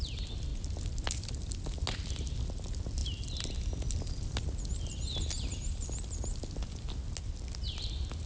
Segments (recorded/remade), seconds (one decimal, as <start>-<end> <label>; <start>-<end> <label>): 0.0-8.3 recorded